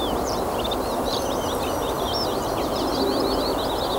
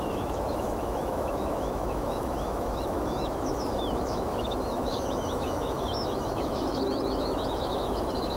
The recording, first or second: first